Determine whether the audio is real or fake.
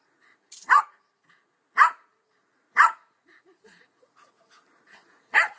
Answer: fake